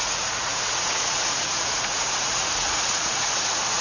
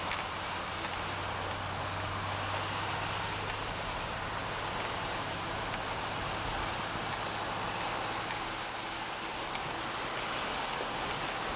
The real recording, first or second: second